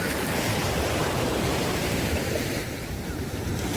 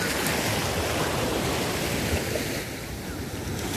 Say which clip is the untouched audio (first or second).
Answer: second